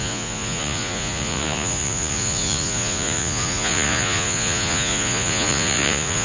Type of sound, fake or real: fake